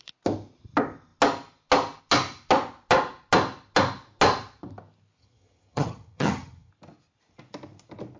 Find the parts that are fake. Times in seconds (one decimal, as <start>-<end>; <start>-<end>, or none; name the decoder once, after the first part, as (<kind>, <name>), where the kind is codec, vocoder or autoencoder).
5.2-6.7 (vocoder, HiFi-GAN)